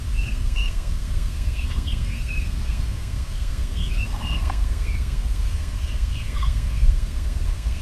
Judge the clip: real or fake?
fake